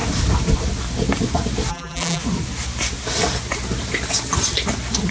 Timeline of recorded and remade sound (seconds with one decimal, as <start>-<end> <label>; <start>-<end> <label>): 0.0-1.7 recorded; 1.7-2.2 remade; 2.2-5.1 recorded